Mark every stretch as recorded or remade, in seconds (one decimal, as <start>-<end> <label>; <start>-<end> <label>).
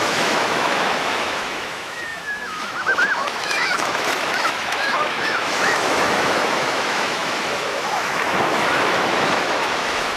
0.0-10.2 remade